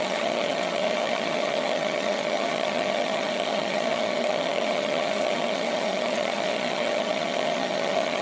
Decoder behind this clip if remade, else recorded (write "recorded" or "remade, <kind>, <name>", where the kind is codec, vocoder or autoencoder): remade, vocoder, HiFi-GAN